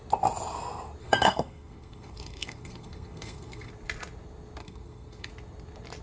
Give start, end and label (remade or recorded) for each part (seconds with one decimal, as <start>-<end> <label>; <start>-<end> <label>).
0.0-1.0 recorded; 1.0-3.7 remade; 3.7-4.6 recorded; 4.6-5.3 remade; 5.3-6.0 recorded